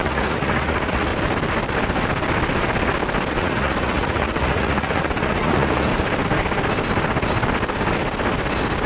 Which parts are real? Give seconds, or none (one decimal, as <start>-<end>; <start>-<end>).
1.1-3.3; 5.9-8.9